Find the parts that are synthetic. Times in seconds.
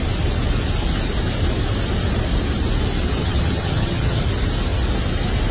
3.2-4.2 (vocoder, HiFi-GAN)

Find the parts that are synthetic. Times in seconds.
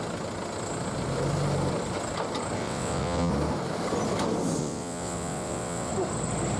2.6-3.3 (vocoder, WaveNeXt); 4.6-5.9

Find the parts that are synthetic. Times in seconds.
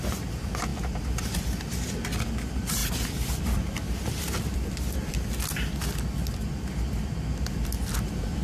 2.8-5.1 (vocoder, BigVGAN v2)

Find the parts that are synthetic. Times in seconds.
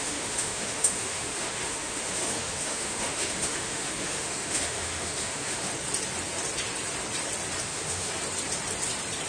0.0-5.7 (autoencoder, DAC-VAE); 7.6-8.1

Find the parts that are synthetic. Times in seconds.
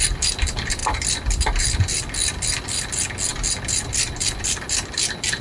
none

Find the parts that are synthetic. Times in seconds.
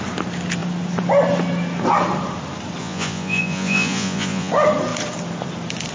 2.8-4.5 (vocoder, Vocos)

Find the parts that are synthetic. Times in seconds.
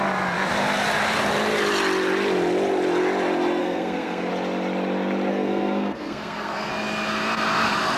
3.6-4.3 (codec, SNAC); 5.3-6.7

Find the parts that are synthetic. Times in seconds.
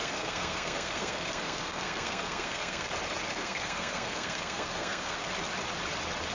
0.0-2.9 (codec, SNAC); 3.3-5.3